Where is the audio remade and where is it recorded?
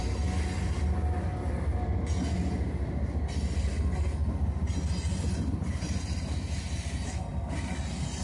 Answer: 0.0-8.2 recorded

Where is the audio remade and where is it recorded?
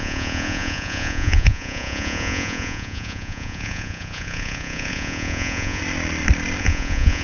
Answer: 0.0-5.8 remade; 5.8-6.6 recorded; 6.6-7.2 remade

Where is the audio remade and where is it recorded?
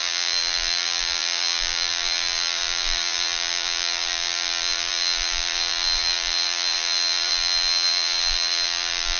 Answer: 0.0-9.2 remade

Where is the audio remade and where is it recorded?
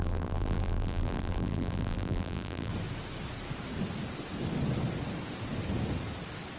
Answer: 0.0-2.7 remade; 2.7-6.6 recorded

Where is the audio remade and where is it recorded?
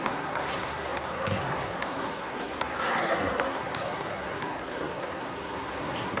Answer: 0.0-6.2 remade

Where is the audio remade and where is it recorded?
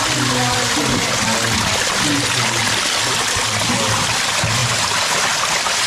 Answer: 0.0-5.9 recorded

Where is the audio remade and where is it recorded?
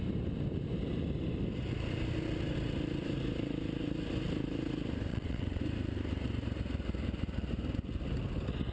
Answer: 0.0-5.1 recorded; 5.1-5.6 remade; 5.6-8.7 recorded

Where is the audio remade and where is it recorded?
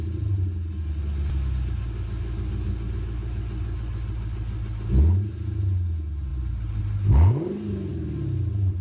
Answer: 0.0-8.8 recorded